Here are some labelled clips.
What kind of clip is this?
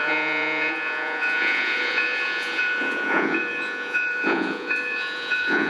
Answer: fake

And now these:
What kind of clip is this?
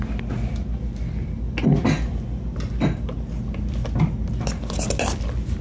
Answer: real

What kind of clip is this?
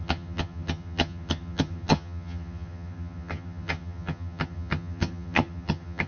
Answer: fake